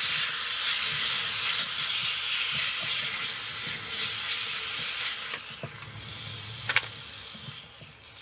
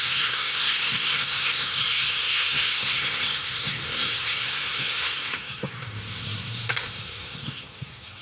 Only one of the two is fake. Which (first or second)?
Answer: second